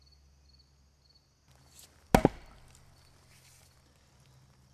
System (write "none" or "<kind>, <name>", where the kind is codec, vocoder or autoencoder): none